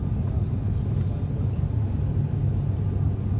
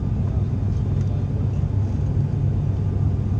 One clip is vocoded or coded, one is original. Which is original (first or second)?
second